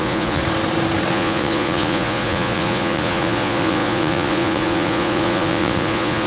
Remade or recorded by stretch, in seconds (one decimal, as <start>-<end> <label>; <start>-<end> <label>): 0.0-0.4 remade; 0.4-1.1 recorded; 1.1-6.3 remade